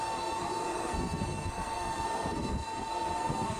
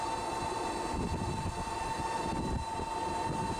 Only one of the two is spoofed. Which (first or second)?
first